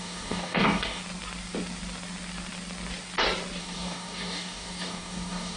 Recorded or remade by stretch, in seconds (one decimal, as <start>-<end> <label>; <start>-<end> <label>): 0.0-1.0 remade; 1.0-3.6 recorded; 3.6-5.6 remade